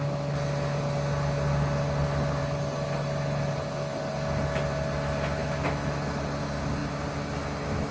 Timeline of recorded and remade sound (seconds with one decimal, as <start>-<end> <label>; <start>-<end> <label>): 0.0-5.4 recorded; 5.4-6.2 remade; 6.2-7.9 recorded